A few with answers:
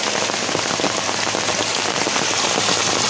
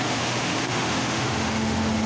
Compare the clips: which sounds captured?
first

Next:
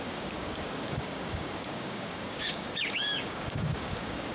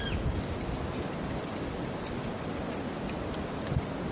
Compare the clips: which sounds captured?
second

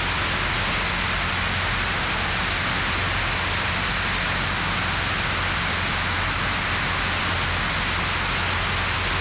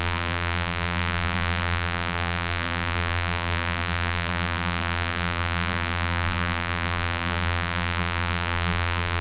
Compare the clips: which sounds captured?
first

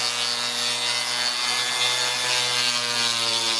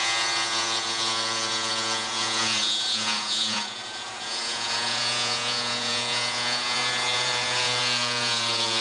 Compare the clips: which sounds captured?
first